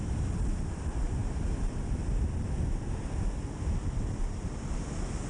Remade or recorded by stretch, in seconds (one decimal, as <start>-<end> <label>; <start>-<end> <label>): 0.0-5.3 recorded